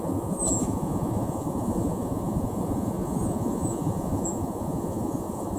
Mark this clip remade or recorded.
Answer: remade